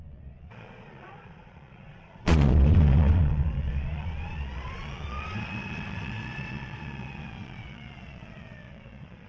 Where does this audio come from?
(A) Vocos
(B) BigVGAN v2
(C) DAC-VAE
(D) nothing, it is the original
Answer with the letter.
A